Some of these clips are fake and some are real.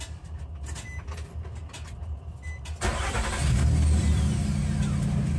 real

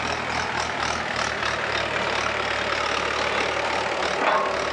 real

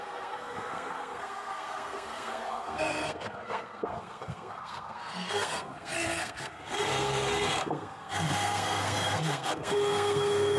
fake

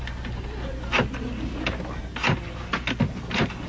real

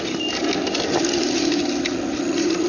real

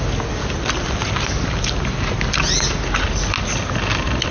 real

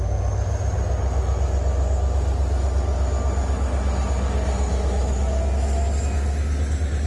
real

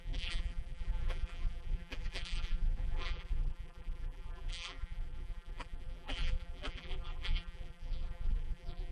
fake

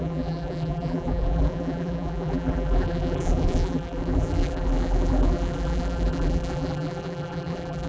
fake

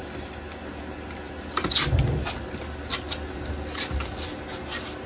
real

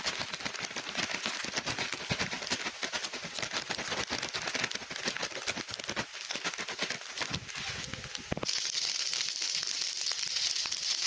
real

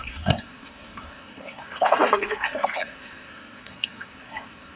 fake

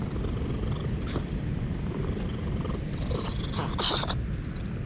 real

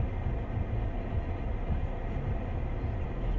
real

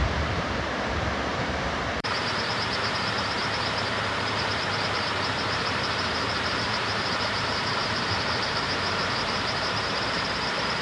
fake